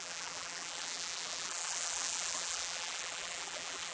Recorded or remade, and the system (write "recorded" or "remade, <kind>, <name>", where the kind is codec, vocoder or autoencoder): remade, vocoder, BigVGAN v2